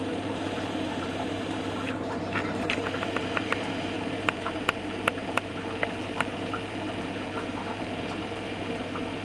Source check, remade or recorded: remade